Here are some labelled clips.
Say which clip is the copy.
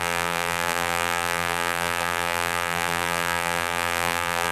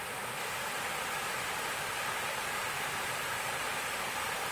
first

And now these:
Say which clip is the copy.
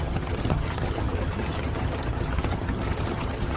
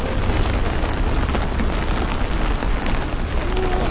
first